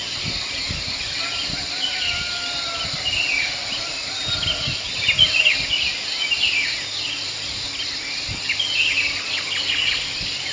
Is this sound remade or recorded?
recorded